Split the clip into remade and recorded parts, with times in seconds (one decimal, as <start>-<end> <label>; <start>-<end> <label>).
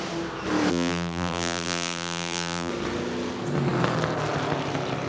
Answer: 0.0-0.7 recorded; 0.7-2.7 remade; 2.7-5.1 recorded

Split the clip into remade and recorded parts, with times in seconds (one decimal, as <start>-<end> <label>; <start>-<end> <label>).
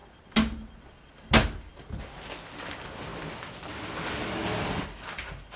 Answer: 0.0-5.6 recorded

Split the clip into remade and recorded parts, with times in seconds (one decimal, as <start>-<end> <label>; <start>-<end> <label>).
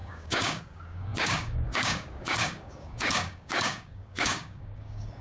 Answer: 0.0-5.2 remade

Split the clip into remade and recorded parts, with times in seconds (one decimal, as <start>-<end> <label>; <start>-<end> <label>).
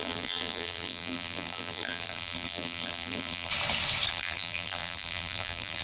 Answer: 0.0-3.5 remade; 3.5-4.1 recorded; 4.1-5.8 remade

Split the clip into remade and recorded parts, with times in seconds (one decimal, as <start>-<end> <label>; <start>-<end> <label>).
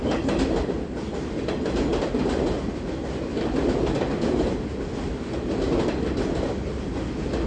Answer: 0.0-3.3 recorded; 3.3-4.1 remade; 4.1-7.5 recorded